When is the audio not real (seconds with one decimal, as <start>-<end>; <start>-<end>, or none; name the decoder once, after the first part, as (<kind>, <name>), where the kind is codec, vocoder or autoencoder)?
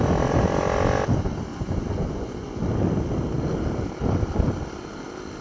1.5-2.6 (vocoder, Vocos)